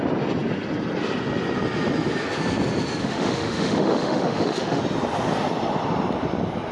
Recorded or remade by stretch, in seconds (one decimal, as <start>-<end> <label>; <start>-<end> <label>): 0.0-3.0 recorded; 3.0-4.8 remade; 4.8-6.7 recorded